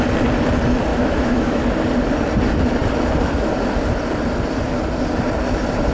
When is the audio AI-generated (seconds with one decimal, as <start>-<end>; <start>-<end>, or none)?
0.9-1.6